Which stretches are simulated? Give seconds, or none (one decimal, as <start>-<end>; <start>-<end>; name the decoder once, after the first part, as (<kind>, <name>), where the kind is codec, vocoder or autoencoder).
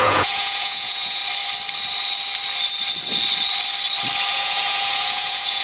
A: 0.0-1.2 (vocoder, Vocos); 4.3-5.6